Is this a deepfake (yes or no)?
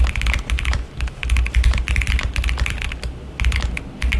no